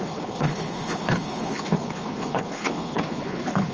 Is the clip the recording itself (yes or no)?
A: no